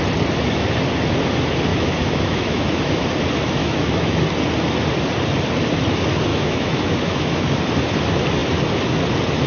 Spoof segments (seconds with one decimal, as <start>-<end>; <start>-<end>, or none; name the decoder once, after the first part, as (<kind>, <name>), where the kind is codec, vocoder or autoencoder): 1.7-2.8 (autoencoder, DAC-VAE); 3.6-4.2; 6.3-7.6